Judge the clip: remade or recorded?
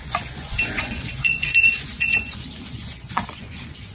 remade